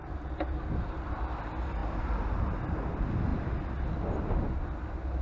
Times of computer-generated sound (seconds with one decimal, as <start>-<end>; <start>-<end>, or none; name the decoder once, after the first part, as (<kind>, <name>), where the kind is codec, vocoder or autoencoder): 0.0-1.1 (vocoder, BigVGAN v2); 1.8-2.7